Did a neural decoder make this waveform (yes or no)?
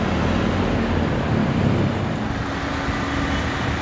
no